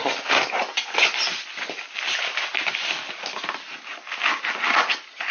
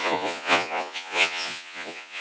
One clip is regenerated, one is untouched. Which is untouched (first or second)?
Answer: first